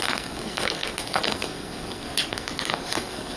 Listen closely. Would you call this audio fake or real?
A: fake